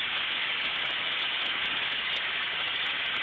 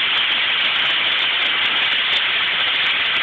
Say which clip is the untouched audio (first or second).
second